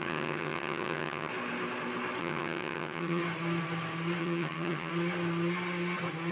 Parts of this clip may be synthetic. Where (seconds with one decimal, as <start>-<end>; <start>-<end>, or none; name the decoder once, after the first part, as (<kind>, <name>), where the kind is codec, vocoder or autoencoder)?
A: 0.0-1.3 (vocoder, HiFi-GAN); 2.2-3.2; 4.2-4.9